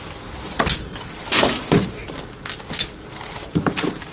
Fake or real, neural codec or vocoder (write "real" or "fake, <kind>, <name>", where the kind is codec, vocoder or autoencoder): real